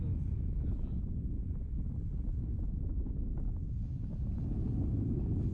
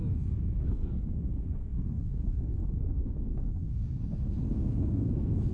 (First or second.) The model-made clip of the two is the second